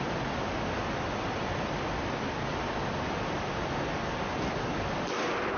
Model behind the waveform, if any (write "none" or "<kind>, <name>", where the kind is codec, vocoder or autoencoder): none